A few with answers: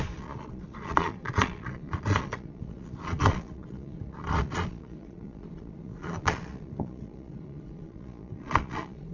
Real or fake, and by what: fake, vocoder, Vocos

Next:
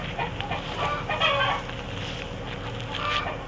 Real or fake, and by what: real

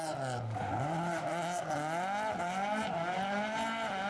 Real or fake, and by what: real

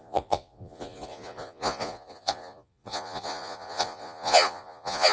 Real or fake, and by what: fake, vocoder, Vocos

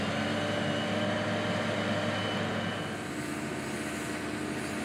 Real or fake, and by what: real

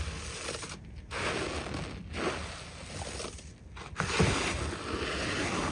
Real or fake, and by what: real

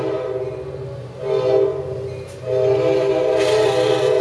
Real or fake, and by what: real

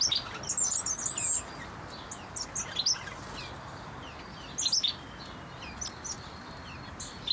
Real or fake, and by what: real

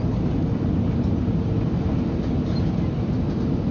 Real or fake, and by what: real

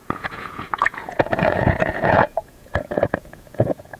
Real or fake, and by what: fake, vocoder, Vocos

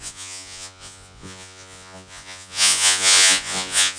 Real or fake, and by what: fake, vocoder, Vocos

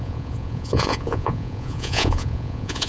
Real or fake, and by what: fake, vocoder, Vocos